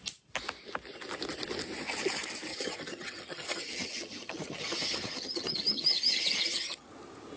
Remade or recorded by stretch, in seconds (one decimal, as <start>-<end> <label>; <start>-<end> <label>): 0.0-2.5 recorded; 2.5-6.9 remade; 6.9-7.4 recorded